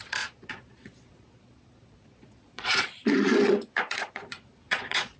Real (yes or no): no